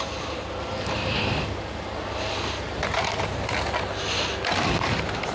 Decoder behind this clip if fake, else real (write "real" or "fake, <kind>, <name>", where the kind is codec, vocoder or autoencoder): real